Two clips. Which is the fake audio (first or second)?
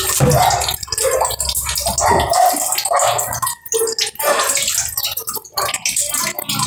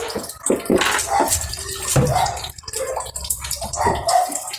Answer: second